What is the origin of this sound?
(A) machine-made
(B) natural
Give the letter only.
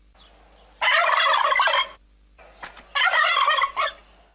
B